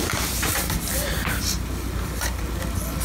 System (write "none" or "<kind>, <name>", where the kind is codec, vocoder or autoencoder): none